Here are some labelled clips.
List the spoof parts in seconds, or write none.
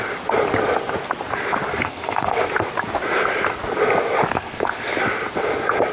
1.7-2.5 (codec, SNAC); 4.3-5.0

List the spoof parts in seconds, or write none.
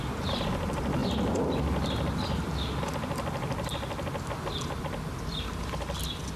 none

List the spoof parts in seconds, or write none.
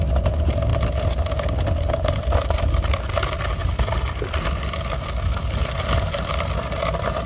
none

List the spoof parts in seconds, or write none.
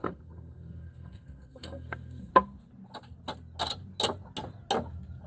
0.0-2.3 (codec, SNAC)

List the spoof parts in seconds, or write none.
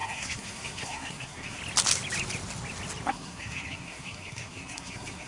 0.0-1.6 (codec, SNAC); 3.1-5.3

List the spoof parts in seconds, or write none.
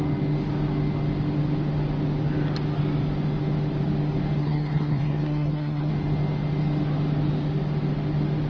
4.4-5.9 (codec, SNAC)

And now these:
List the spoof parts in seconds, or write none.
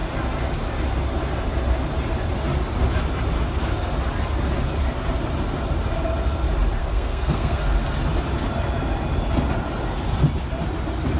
6.8-7.6 (codec, SNAC)